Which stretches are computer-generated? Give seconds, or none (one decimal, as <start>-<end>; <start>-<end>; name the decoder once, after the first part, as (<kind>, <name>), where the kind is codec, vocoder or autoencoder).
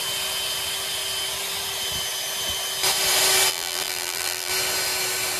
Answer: 3.5-4.5 (vocoder, BigVGAN v2)